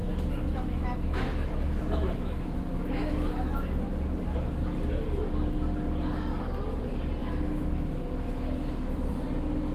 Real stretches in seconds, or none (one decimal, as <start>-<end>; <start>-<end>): 3.8-7.2; 9.1-9.7

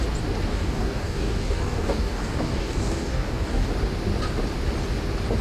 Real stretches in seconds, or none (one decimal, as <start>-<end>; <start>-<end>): 0.0-0.5; 3.7-5.4

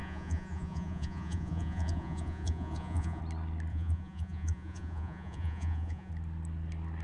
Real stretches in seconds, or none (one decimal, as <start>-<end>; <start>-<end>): 3.2-3.7; 6.1-7.0

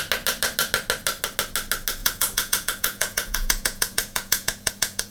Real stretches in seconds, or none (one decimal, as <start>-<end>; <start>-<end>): 0.0-2.0

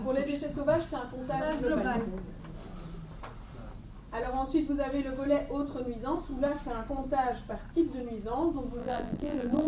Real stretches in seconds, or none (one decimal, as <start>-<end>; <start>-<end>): 0.0-8.8

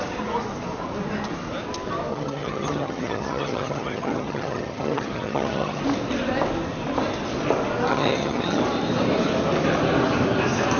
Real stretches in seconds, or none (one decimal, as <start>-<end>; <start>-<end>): 0.0-2.1; 5.8-7.9; 8.6-10.8

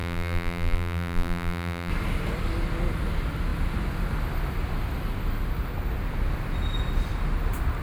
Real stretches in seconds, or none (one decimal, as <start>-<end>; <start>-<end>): 1.9-7.8